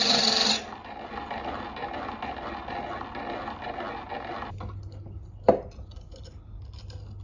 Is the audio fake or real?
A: real